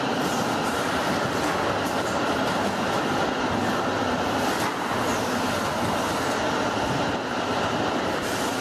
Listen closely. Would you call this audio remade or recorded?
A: recorded